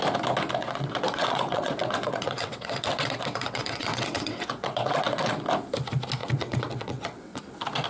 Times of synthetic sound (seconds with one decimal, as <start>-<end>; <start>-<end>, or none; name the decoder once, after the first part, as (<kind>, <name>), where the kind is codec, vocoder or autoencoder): 0.6-5.3 (vocoder, WaveNeXt); 6.2-7.4